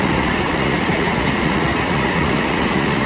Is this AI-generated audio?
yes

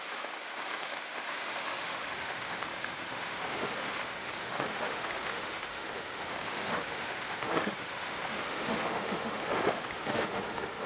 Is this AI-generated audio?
yes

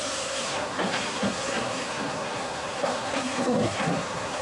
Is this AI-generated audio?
yes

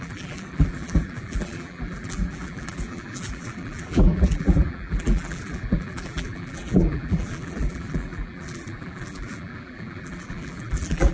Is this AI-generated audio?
yes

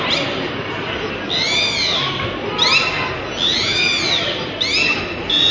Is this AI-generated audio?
no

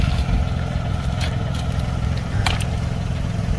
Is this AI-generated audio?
no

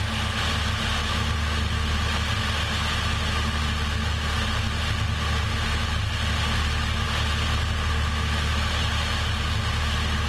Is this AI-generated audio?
no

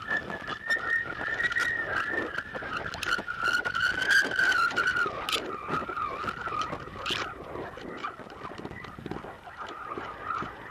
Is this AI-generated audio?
no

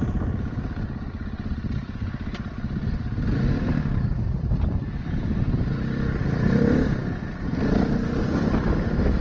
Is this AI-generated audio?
yes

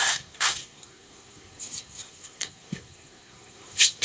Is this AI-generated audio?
yes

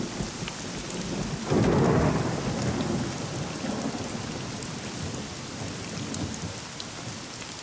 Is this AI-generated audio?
no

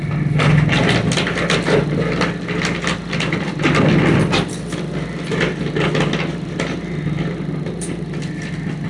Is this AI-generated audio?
no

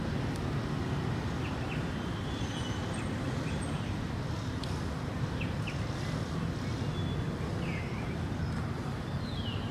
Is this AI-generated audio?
no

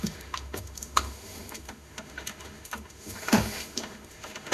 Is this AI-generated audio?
yes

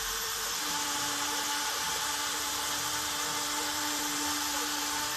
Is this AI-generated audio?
yes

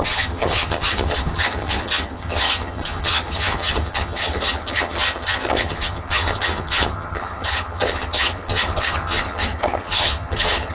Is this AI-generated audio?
yes